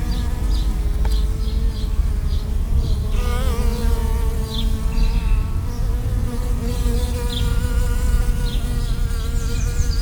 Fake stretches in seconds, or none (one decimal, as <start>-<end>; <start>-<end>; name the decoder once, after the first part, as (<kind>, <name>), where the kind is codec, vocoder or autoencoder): none